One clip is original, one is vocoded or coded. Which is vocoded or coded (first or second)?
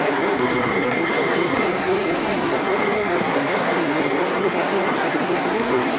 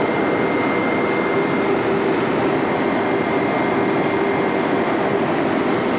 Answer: first